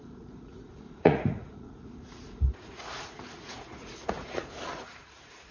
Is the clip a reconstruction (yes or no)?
yes